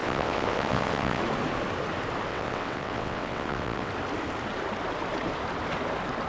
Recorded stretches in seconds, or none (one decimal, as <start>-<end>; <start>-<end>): 1.2-2.3; 3.9-6.3

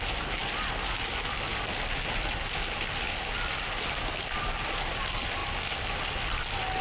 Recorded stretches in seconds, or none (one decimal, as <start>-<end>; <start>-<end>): 0.0-6.8

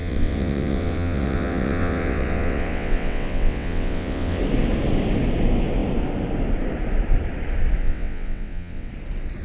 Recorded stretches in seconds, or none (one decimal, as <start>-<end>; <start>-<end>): 4.4-7.8; 8.9-9.4

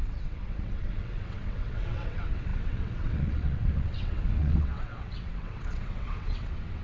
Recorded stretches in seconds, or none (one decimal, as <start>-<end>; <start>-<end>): none